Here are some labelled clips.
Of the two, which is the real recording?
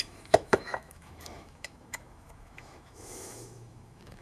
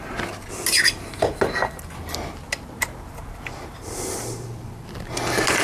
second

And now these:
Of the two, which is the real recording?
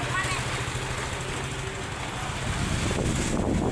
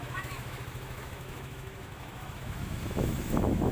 first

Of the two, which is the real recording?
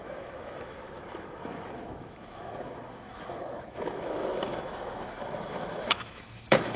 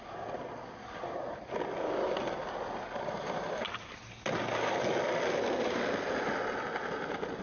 second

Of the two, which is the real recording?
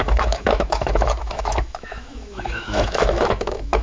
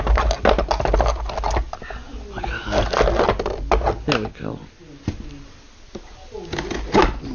second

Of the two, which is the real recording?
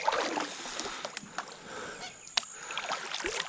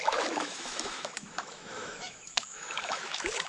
first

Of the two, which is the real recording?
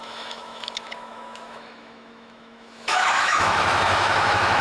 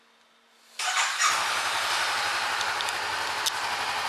second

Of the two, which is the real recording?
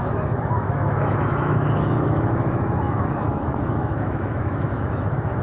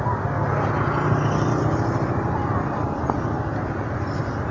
second